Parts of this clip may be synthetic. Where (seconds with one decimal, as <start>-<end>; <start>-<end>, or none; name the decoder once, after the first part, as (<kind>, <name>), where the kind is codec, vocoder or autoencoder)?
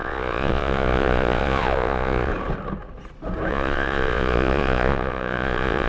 0.0-2.3 (vocoder, Vocos); 3.5-5.9